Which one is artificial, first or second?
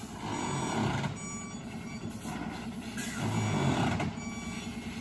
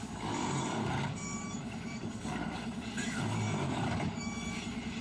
second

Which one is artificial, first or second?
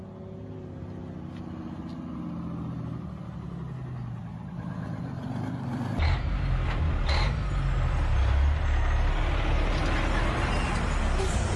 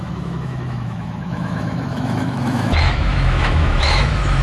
second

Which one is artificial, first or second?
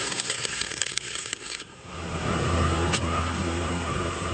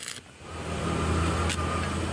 first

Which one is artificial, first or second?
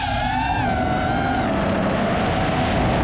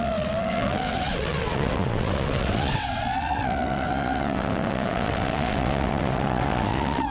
second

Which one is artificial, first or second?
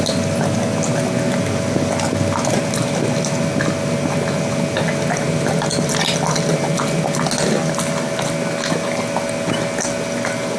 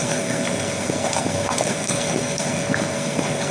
second